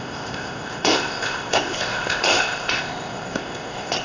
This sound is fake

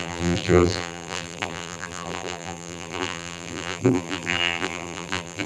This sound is fake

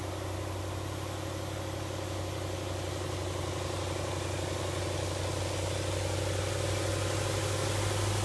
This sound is real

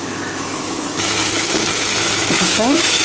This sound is fake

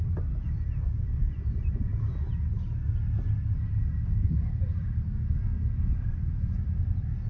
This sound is real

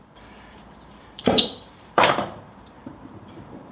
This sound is fake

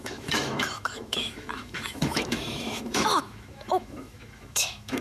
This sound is fake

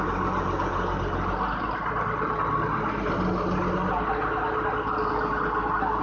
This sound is real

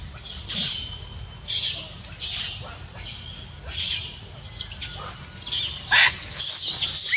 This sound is real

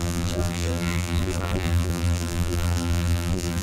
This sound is fake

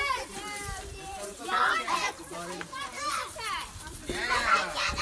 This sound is fake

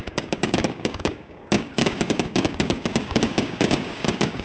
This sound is fake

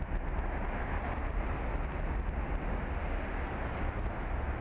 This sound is real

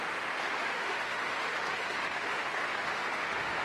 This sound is fake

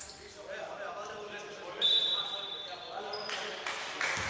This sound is real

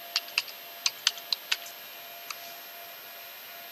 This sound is real